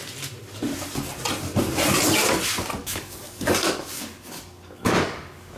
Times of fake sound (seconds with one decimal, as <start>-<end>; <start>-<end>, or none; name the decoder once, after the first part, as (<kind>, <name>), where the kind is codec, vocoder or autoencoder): 2.8-5.6 (codec, DAC)